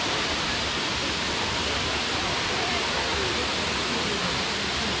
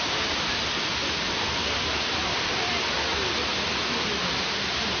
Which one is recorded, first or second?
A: second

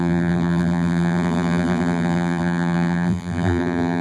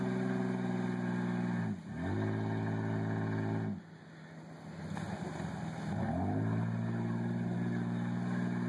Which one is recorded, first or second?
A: second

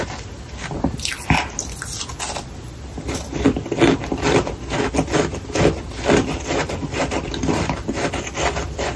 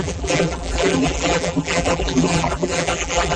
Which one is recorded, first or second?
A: first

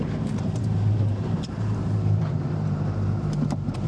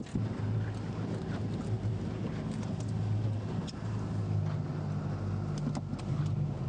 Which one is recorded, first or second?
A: second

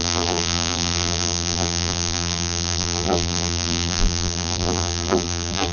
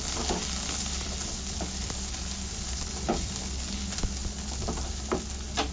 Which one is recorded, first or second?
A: second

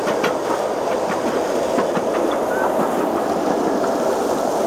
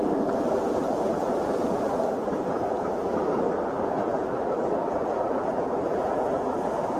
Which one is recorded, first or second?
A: first